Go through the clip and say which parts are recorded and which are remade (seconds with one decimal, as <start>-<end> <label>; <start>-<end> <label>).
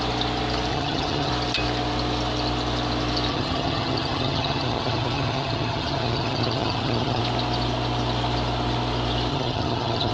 0.0-0.7 recorded; 0.7-1.3 remade; 1.3-3.3 recorded; 3.3-7.2 remade; 7.2-9.3 recorded; 9.3-10.1 remade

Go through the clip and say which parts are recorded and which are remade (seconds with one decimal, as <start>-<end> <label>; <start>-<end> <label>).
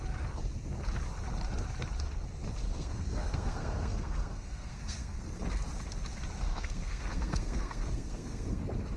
0.0-2.6 recorded; 2.6-5.4 remade; 5.4-6.5 recorded; 6.5-8.6 remade; 8.6-9.0 recorded